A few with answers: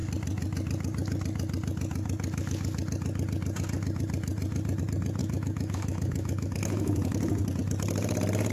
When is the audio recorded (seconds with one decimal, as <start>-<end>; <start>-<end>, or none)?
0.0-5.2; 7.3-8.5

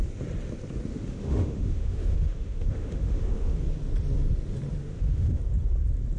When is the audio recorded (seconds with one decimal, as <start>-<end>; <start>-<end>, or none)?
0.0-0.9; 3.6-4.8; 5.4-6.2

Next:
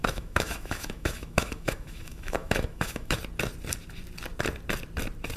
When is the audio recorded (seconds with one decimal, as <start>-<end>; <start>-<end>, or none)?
3.2-5.4

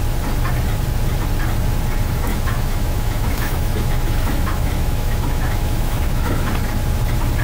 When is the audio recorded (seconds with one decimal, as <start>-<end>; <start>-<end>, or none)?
0.0-2.3; 6.5-7.4

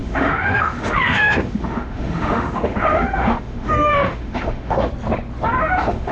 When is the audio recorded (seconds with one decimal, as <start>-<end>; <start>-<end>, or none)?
4.9-5.6

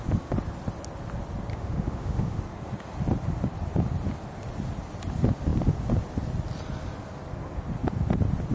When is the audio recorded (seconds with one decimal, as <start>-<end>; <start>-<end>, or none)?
0.0-1.5; 2.4-8.5